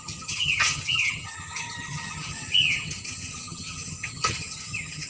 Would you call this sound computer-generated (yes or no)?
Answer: yes